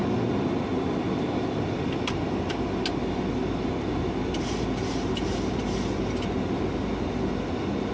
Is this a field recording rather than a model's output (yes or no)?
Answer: yes